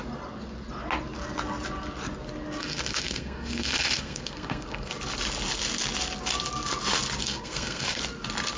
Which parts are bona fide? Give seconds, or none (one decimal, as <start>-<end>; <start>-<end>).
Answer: 0.0-2.6; 4.9-7.2; 8.0-8.6